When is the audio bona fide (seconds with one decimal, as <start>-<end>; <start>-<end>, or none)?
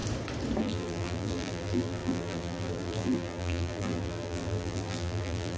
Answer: 0.0-0.6